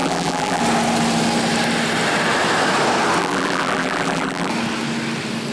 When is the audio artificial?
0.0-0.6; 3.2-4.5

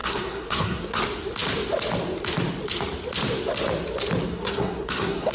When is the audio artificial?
0.0-1.0; 4.3-5.3

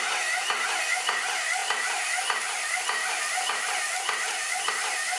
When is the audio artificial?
none

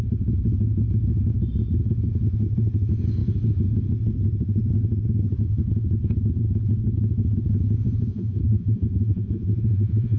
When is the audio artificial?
8.1-10.2

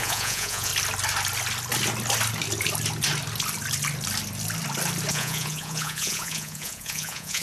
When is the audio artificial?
0.0-0.7; 5.1-7.4

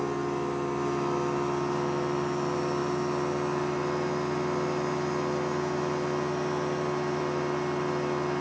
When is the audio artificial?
none